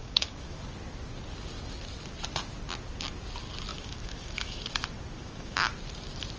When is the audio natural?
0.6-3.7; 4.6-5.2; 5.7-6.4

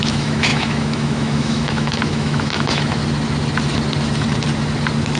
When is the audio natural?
3.0-5.2

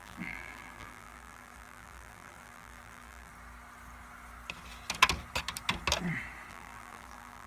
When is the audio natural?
3.3-6.5

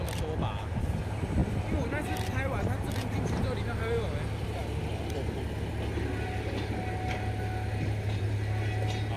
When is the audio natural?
0.0-9.2

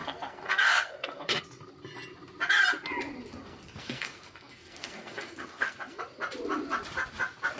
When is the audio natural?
1.4-3.4; 6.0-7.6

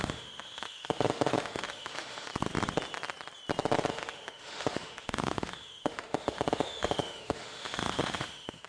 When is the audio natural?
2.3-3.9

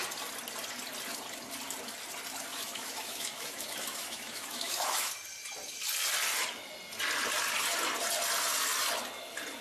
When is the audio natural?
0.0-2.5; 5.1-9.6

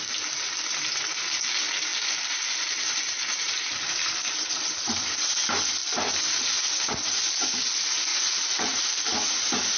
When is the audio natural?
0.0-1.9; 5.2-8.1; 9.0-9.8